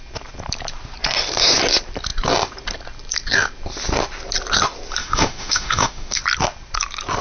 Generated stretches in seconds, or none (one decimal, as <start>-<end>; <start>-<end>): 5.0-6.2